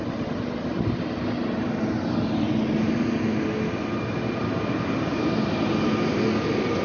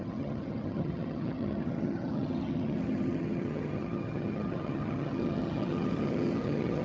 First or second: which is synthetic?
second